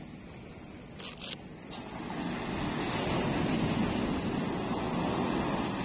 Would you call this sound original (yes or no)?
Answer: yes